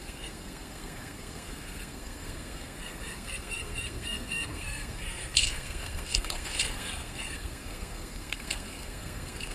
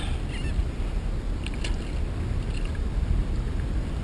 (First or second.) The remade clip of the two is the first